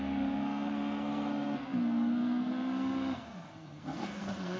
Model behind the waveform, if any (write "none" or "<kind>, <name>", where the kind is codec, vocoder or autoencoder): codec, SNAC